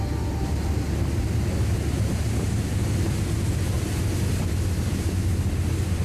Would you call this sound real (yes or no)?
yes